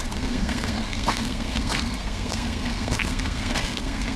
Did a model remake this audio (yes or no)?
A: yes